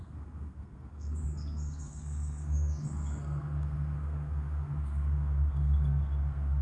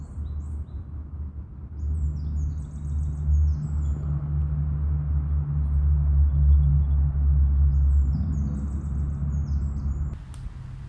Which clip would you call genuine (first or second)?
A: second